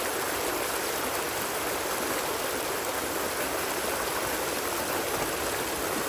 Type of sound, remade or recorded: recorded